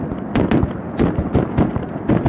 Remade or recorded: recorded